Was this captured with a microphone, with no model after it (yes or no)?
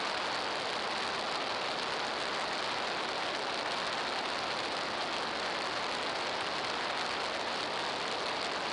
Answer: yes